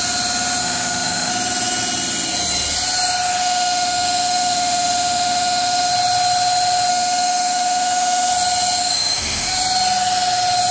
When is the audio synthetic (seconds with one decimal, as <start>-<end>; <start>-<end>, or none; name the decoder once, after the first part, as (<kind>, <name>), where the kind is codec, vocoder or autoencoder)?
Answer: 0.6-1.3 (autoencoder, DAC-VAE); 3.4-5.9; 6.9-8.3; 8.8-9.6